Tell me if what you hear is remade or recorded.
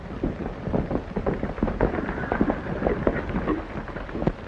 recorded